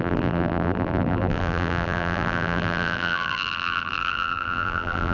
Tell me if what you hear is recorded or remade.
remade